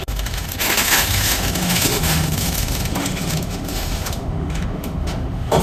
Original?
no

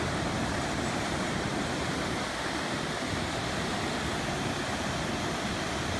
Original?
yes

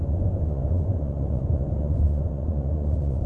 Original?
no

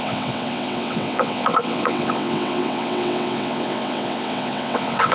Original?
no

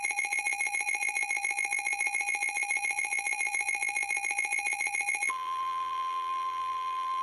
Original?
no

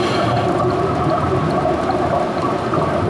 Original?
yes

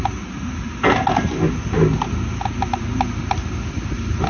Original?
yes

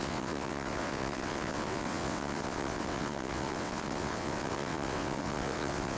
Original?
no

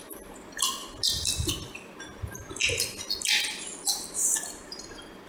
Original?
yes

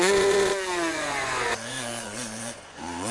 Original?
no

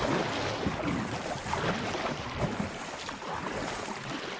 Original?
yes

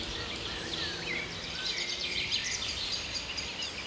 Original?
yes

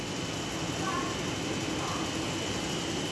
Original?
yes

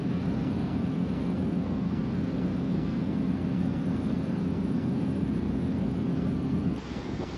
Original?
no